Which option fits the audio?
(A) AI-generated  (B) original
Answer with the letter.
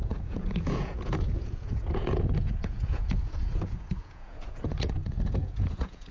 A